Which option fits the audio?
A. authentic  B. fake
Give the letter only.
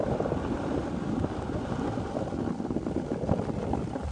A